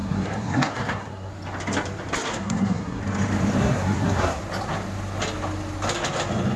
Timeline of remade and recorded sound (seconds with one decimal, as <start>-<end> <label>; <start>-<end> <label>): 0.0-1.3 remade; 1.3-2.3 recorded; 2.3-3.0 remade; 3.0-3.6 recorded; 3.6-4.4 remade; 4.4-6.6 recorded